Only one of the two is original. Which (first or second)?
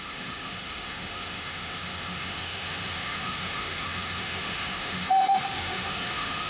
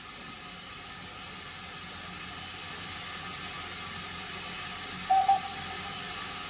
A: second